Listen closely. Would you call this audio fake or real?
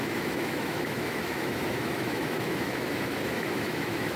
fake